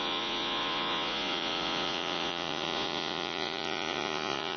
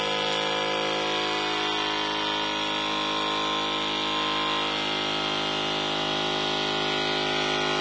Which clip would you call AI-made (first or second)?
first